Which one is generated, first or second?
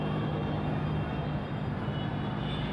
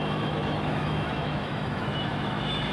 second